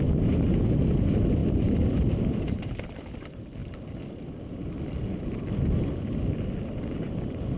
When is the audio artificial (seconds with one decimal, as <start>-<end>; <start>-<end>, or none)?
0.0-3.6; 4.9-7.6